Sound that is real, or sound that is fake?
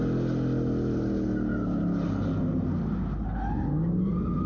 real